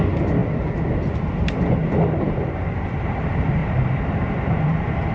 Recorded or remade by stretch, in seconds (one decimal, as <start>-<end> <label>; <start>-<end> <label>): 0.0-1.8 recorded; 1.8-2.9 remade; 2.9-3.6 recorded; 3.6-5.1 remade